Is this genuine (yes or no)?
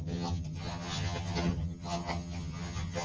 no